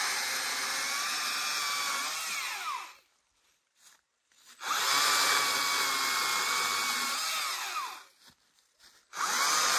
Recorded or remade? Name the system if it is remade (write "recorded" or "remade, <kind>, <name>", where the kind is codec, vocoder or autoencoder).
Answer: recorded